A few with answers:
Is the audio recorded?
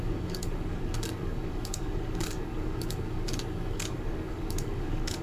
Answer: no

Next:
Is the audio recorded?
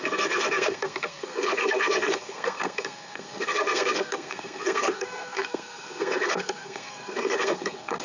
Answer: no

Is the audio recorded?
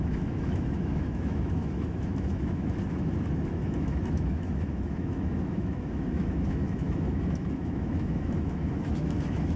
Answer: no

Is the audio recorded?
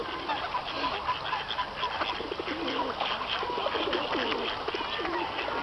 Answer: yes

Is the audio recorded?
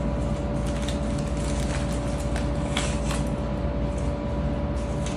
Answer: yes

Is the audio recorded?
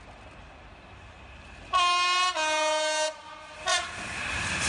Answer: yes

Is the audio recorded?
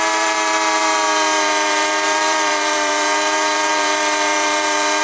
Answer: no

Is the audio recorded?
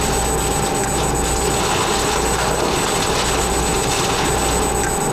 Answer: yes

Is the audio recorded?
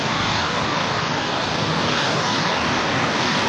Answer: no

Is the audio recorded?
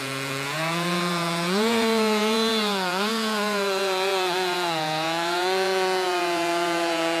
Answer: no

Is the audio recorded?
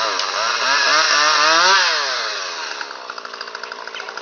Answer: yes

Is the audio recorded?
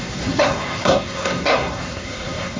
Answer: no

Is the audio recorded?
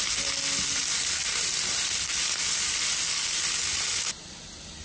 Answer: yes